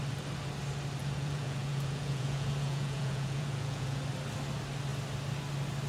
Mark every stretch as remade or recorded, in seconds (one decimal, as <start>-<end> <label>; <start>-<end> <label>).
0.0-1.0 recorded; 1.0-4.0 remade; 4.0-5.9 recorded